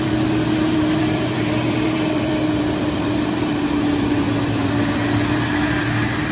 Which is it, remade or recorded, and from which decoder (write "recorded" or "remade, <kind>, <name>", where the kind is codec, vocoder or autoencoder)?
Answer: remade, vocoder, BigVGAN v2